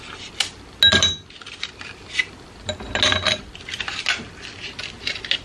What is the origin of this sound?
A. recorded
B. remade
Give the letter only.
A